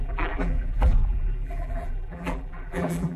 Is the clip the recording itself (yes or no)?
no